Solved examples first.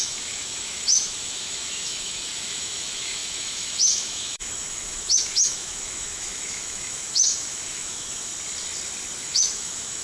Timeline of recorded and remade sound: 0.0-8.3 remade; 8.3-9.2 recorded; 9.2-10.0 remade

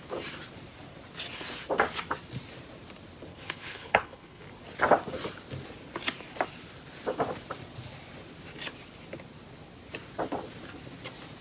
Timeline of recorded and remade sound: 0.0-3.3 recorded; 3.3-4.4 remade; 4.4-11.4 recorded

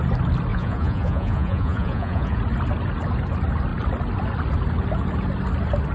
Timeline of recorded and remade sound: 0.0-0.5 recorded; 0.5-2.4 remade; 2.4-5.9 recorded

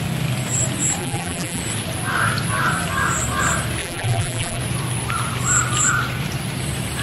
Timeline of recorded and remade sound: 0.0-1.0 recorded; 1.0-1.6 remade; 1.6-3.8 recorded; 3.8-4.6 remade; 4.6-7.0 recorded

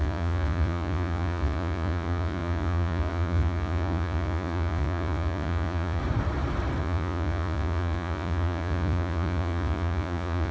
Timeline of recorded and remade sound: 0.0-6.0 remade; 6.0-6.8 recorded; 6.8-10.5 remade